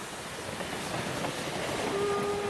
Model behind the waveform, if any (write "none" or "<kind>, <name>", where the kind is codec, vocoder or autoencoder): none